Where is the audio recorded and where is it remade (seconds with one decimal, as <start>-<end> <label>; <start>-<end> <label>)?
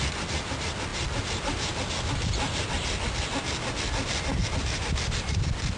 0.0-5.8 recorded